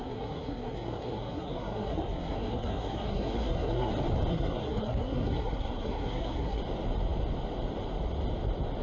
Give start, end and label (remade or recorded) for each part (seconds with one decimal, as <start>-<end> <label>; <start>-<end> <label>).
0.0-3.9 remade; 3.9-4.3 recorded; 4.3-6.6 remade; 6.6-8.8 recorded